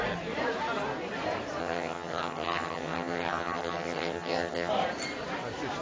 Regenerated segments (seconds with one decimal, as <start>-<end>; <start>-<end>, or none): 1.6-4.7